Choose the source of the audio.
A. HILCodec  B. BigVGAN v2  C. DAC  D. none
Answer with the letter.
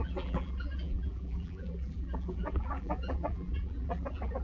B